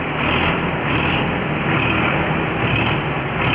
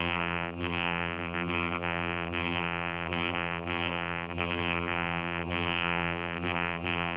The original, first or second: first